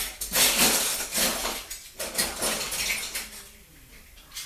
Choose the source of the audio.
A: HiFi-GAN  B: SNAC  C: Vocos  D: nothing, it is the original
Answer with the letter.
D